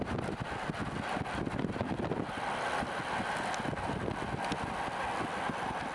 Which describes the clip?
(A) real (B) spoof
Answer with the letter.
A